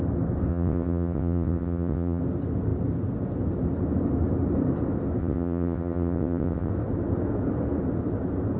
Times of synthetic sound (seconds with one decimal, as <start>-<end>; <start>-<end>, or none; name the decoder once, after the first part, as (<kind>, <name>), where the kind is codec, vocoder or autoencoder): 0.5-2.2 (vocoder, WaveNeXt); 5.2-6.7